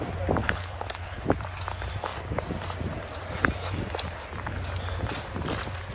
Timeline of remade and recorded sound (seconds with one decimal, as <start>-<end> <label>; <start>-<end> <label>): 0.0-0.4 recorded; 0.4-1.2 remade; 1.2-5.9 recorded